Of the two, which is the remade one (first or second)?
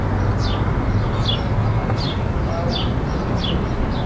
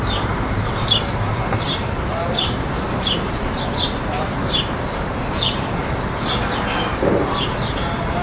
second